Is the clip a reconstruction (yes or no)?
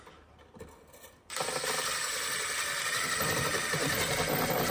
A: no